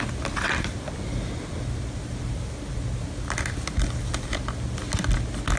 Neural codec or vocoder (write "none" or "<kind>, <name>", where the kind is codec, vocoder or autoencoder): none